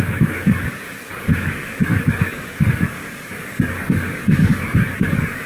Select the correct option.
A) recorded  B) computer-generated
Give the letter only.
B